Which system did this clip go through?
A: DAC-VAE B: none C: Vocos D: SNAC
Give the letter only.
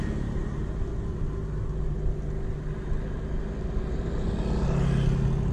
B